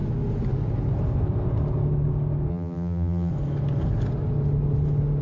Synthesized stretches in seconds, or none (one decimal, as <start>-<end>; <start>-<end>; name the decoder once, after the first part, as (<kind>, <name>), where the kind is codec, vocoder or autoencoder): 2.5-3.3 (vocoder, BigVGAN v2)